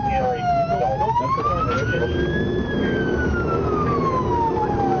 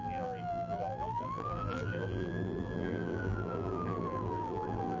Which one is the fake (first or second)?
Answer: second